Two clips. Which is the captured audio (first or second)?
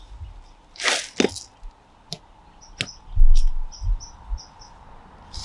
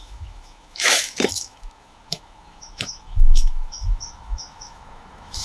first